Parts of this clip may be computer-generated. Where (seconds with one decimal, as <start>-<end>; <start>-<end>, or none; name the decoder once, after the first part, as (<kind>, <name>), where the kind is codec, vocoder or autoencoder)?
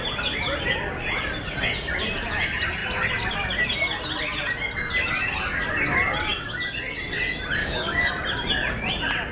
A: 7.6-8.1 (codec, DAC)